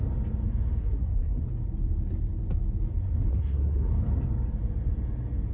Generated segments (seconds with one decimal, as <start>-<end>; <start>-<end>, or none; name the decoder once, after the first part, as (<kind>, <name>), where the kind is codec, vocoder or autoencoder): 0.8-1.4 (codec, SNAC); 3.3-3.9